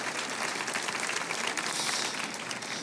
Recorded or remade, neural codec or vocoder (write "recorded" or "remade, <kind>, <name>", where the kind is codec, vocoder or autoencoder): recorded